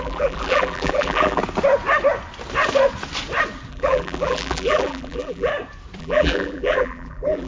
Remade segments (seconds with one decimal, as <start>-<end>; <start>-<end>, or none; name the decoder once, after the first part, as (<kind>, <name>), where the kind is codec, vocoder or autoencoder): 0.0-1.4 (vocoder, BigVGAN v2); 3.7-5.5; 6.0-7.5

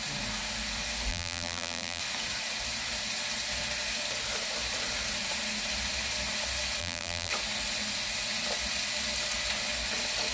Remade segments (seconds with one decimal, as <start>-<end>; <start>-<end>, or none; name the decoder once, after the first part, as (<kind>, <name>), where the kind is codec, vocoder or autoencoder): 1.1-2.0 (vocoder, BigVGAN v2); 6.8-7.3

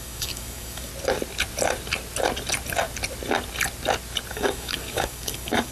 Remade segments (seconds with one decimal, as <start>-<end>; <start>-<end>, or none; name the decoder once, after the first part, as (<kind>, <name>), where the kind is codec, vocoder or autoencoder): 0.0-0.9 (codec, DAC); 4.3-5.7

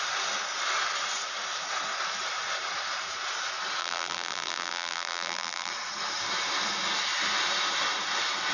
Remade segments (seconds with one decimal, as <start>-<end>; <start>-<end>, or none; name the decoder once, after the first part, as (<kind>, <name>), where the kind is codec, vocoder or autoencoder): 3.8-5.7 (vocoder, BigVGAN v2)

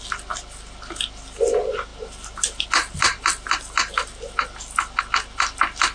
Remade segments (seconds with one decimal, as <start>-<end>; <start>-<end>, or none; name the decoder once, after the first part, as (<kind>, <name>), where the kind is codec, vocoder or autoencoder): none

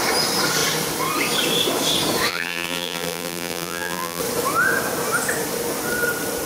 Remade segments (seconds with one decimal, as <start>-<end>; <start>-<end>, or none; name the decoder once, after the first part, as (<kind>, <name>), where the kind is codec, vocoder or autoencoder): 2.3-4.2 (vocoder, BigVGAN v2)